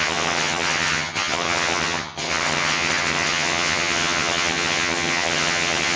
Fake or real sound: fake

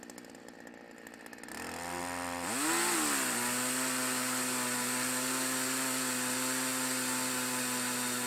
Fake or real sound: real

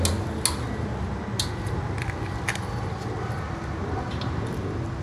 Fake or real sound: real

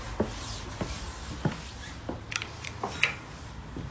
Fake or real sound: real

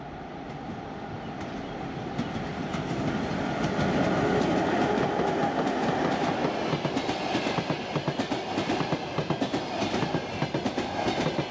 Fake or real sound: real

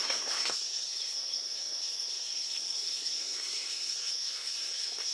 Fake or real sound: fake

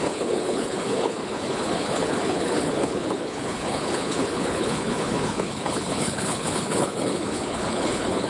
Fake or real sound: fake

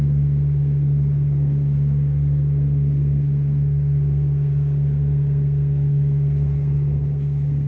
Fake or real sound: fake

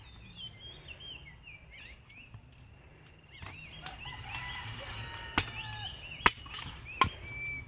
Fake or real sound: real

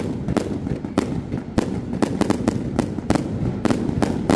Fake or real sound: real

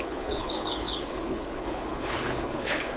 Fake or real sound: fake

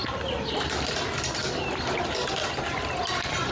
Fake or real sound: real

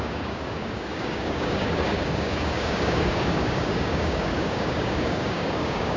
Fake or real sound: fake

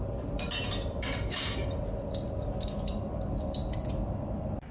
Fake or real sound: real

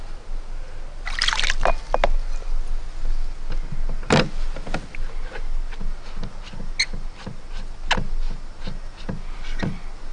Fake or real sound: real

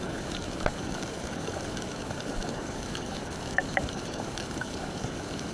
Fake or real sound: fake